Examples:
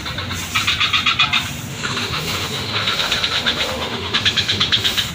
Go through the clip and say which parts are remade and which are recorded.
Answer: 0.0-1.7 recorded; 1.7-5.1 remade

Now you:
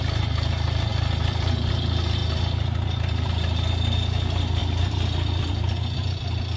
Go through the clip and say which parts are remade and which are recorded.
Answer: 0.0-0.9 recorded; 0.9-1.7 remade; 1.7-2.2 recorded; 2.2-3.3 remade; 3.3-4.6 recorded; 4.6-6.6 remade

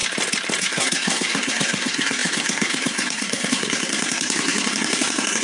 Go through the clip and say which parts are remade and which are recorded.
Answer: 0.0-0.6 recorded; 0.6-5.4 remade

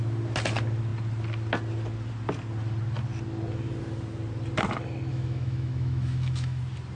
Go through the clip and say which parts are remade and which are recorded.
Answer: 0.0-5.1 recorded; 5.1-6.6 remade; 6.6-7.0 recorded

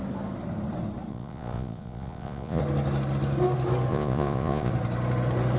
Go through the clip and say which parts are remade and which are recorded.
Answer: 0.0-1.1 recorded; 1.1-2.6 remade; 2.6-3.9 recorded; 3.9-4.7 remade; 4.7-5.6 recorded

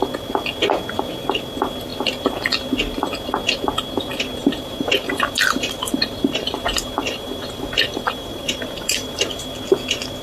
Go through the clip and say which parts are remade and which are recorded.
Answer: 0.0-4.4 recorded; 4.4-9.5 remade; 9.5-10.2 recorded

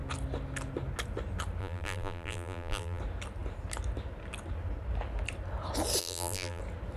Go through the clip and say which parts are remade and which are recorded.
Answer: 0.0-1.6 recorded; 1.6-3.0 remade; 3.0-6.0 recorded; 6.0-6.6 remade; 6.6-7.0 recorded